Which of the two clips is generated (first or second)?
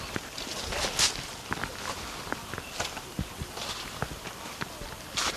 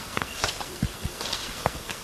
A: second